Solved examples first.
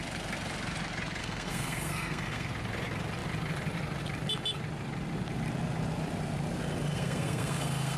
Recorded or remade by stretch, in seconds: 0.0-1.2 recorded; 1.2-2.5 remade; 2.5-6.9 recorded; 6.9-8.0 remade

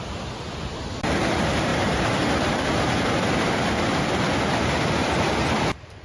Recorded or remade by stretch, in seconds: 0.0-6.0 recorded

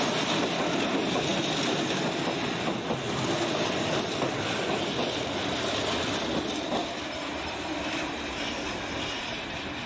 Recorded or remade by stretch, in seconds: 0.0-9.9 recorded

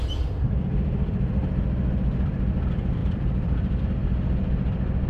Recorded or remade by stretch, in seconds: 0.0-1.4 remade; 1.4-2.3 recorded; 2.3-5.1 remade

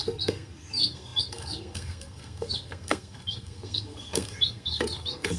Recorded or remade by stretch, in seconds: 0.0-5.4 remade

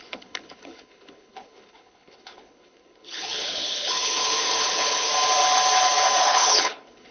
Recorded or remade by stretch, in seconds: 0.0-5.1 remade; 5.1-6.2 recorded; 6.2-7.1 remade

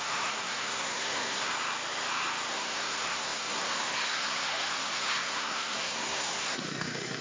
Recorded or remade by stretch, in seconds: 0.0-1.5 remade; 1.5-2.5 recorded; 2.5-7.2 remade